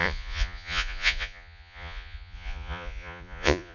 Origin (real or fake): fake